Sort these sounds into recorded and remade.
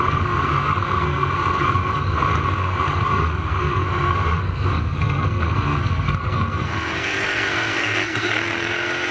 remade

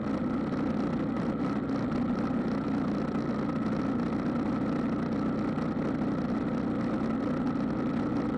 recorded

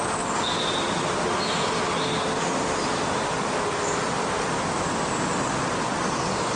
recorded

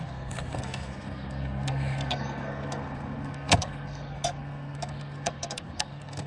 remade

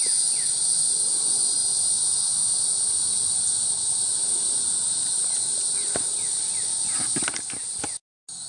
recorded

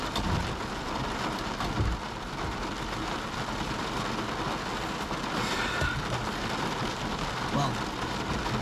recorded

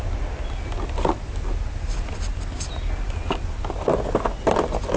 recorded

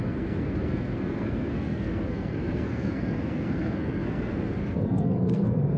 remade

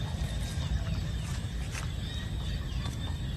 recorded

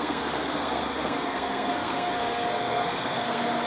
remade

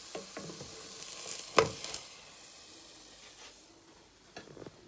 recorded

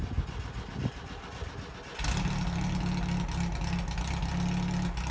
recorded